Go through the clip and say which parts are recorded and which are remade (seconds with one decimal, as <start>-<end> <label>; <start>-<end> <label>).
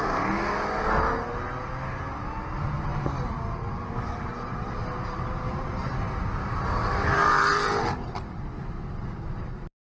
0.0-2.9 recorded; 2.9-8.1 remade; 8.1-9.8 recorded